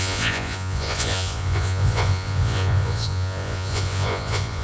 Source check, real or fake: fake